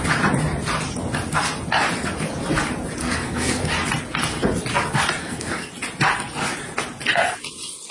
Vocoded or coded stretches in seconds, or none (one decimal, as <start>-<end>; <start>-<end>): 3.0-3.6; 5.2-5.7